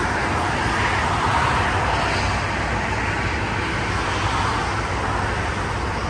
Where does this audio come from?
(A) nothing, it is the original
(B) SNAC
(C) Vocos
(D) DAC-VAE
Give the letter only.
A